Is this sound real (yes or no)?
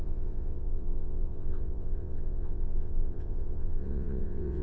no